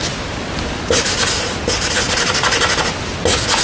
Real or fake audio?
real